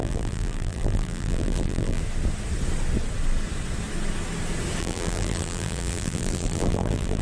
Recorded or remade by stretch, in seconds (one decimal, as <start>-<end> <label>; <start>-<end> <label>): 0.0-2.0 remade; 2.0-4.8 recorded; 4.8-7.2 remade